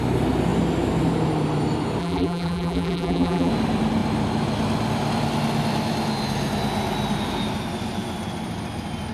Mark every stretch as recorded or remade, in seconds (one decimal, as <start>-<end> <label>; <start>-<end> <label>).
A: 0.0-2.0 recorded; 2.0-3.5 remade; 3.5-9.1 recorded